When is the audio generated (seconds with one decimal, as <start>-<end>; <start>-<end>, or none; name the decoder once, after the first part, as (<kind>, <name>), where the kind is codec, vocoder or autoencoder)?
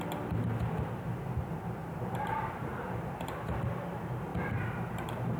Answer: 1.8-3.8 (vocoder, BigVGAN v2); 4.3-5.4